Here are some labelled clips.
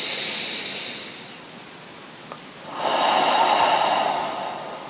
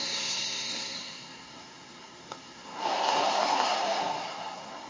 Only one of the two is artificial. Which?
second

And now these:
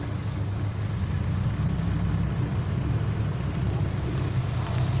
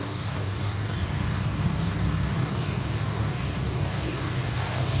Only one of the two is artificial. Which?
second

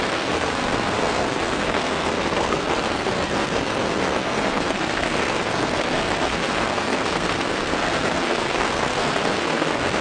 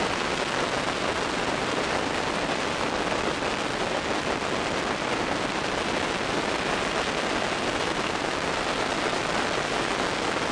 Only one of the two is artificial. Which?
first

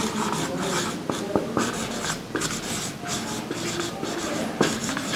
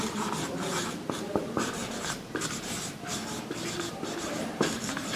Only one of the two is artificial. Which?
second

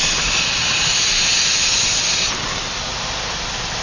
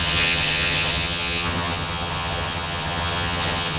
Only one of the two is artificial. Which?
second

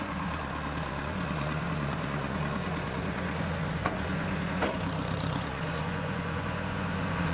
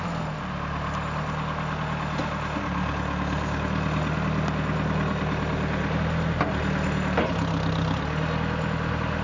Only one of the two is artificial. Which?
first